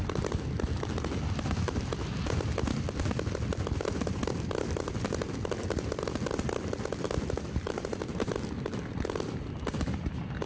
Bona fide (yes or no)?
yes